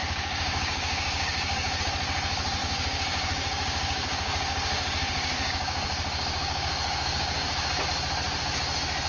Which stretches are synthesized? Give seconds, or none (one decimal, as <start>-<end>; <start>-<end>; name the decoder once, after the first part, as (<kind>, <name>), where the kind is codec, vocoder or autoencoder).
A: 0.0-1.8 (codec, DAC); 2.6-7.8